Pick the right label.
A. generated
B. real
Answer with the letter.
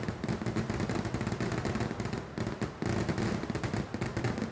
B